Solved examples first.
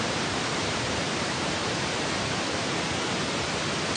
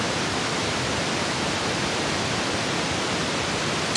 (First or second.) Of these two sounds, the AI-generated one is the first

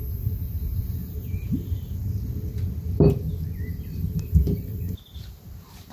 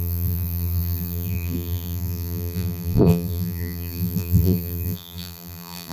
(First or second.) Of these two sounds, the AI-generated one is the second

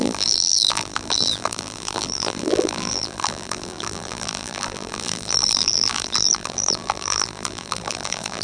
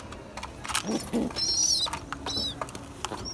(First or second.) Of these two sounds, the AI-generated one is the first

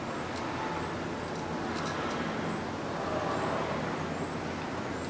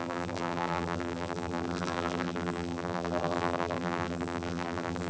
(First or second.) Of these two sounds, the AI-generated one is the second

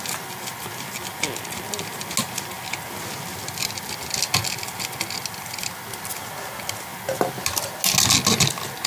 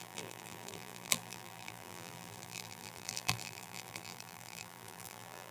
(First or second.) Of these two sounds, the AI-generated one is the second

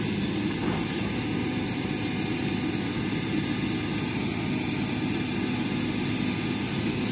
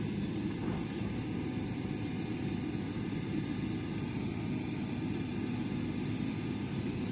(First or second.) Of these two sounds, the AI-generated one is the second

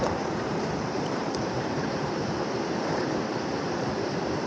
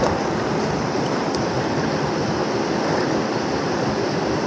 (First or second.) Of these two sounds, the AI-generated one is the first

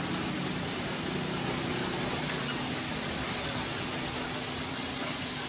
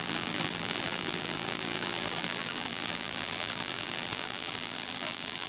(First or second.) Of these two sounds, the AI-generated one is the second